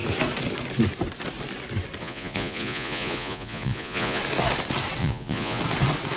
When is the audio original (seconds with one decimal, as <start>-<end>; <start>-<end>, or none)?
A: 0.0-2.0; 4.2-5.0; 5.6-6.2